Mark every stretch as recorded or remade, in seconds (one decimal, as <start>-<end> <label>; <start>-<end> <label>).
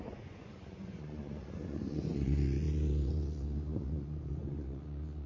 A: 0.0-5.3 remade